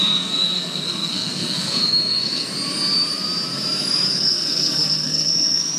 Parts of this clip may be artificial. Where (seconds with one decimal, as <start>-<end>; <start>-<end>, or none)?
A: 0.0-2.5; 4.1-5.8